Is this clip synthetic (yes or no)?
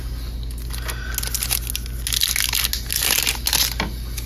no